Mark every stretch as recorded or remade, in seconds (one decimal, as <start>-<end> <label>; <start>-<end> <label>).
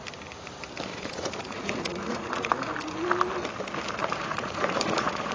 0.0-0.9 recorded; 0.9-2.5 remade; 2.5-4.0 recorded; 4.0-5.3 remade